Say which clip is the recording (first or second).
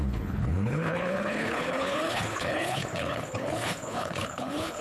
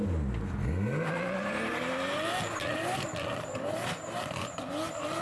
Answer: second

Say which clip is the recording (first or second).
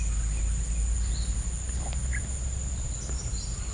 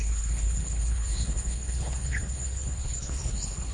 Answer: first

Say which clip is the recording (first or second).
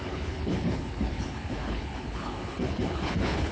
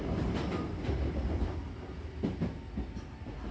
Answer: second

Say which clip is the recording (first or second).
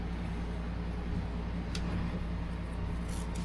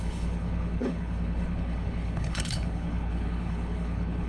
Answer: first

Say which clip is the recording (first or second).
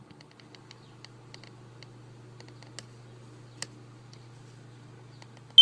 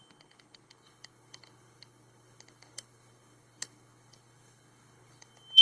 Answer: first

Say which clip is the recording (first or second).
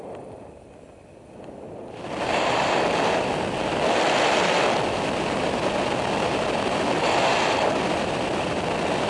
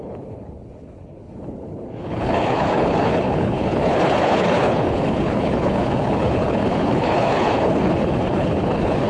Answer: first